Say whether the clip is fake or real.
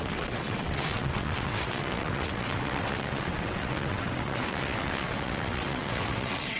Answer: fake